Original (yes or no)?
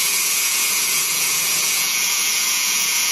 no